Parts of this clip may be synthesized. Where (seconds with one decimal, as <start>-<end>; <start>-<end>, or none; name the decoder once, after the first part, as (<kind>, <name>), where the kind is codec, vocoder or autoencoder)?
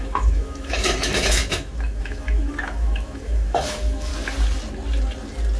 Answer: 0.0-4.1 (autoencoder, DAC-VAE)